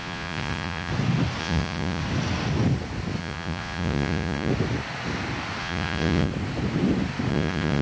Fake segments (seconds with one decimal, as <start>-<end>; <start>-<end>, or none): 0.0-0.9; 1.4-2.0; 3.2-4.5; 5.6-6.3; 7.3-7.8